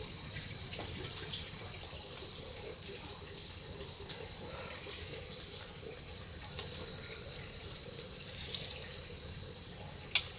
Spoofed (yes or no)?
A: no